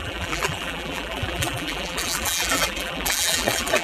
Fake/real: fake